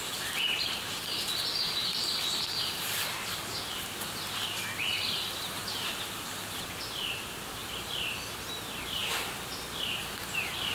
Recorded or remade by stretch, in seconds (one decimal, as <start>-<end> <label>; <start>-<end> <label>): 0.0-10.7 remade